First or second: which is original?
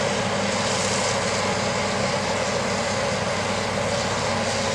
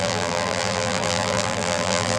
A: first